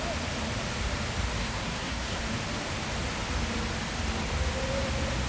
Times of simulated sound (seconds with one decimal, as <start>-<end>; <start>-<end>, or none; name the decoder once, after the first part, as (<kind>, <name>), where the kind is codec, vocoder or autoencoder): 1.4-2.2 (codec, SNAC)